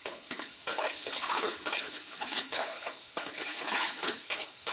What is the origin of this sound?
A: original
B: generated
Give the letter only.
B